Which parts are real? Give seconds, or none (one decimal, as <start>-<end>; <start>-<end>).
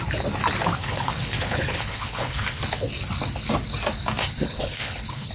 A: 0.0-0.8; 2.6-4.2